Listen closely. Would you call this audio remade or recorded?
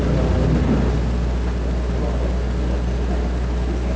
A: recorded